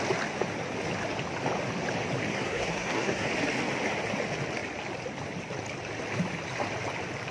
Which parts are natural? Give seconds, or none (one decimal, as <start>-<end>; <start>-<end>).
0.0-2.3; 3.3-7.3